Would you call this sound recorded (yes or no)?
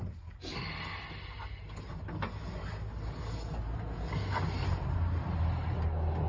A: yes